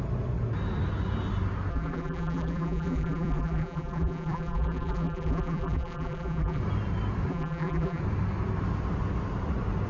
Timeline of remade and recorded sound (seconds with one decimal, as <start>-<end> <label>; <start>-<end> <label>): 0.0-1.7 recorded; 1.7-6.6 remade; 6.6-7.3 recorded; 7.3-8.0 remade; 8.0-9.9 recorded